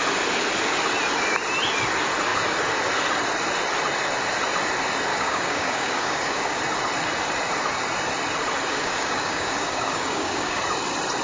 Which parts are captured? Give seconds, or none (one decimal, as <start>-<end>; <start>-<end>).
0.0-5.1; 6.6-8.7; 10.6-11.2